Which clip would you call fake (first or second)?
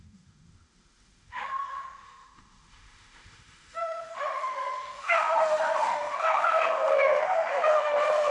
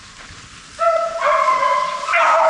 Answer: first